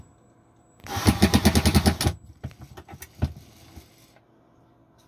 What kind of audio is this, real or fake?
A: real